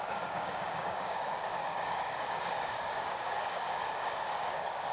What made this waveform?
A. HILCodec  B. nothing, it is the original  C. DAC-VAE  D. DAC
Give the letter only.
D